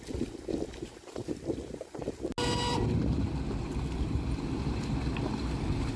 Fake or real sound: real